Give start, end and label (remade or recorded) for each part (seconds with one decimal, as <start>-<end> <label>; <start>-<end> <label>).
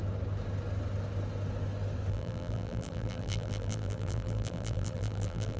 0.0-2.1 recorded; 2.1-5.6 remade